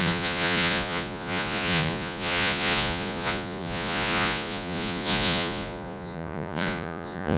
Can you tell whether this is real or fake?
fake